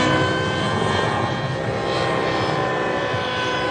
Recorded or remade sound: recorded